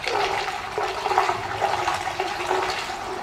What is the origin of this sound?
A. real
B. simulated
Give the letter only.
B